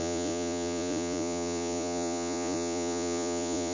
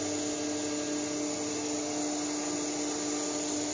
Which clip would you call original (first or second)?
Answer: second